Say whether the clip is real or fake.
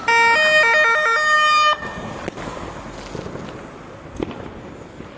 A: real